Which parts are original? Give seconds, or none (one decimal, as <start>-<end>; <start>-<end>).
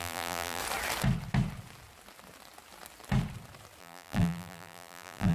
0.6-3.8